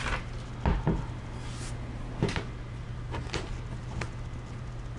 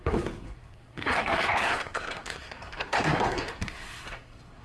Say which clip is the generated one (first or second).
second